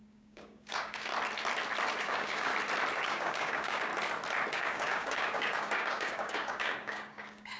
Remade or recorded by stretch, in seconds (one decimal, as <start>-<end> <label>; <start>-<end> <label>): 0.0-1.1 remade; 1.1-2.0 recorded; 2.0-2.5 remade; 2.5-3.0 recorded; 3.0-3.9 remade; 3.9-4.5 recorded; 4.5-7.6 remade